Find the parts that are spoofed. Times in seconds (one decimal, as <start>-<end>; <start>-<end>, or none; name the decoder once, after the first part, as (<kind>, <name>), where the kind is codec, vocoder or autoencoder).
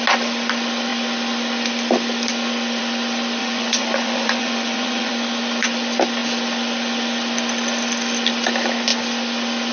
3.4-5.1 (vocoder, Vocos)